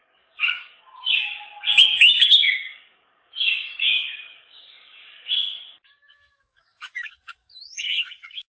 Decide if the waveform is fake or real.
fake